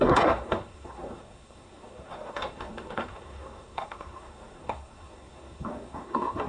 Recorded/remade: remade